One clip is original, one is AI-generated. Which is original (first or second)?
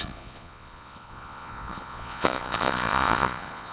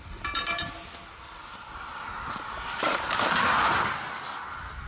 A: second